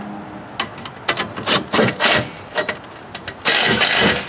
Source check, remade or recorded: recorded